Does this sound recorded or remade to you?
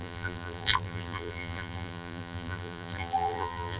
remade